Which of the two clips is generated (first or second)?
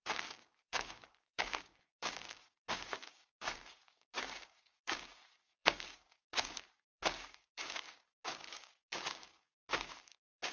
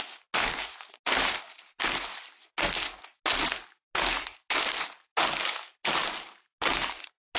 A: first